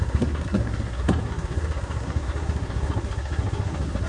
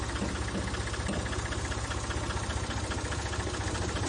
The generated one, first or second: first